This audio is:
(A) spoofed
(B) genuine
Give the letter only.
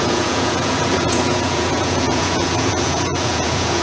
A